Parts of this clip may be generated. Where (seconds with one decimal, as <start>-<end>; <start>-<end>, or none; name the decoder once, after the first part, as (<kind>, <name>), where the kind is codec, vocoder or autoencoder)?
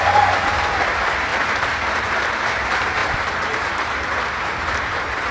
0.0-1.3 (vocoder, BigVGAN v2); 2.1-5.3